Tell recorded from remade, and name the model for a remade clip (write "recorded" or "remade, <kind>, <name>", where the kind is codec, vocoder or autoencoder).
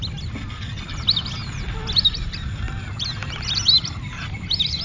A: recorded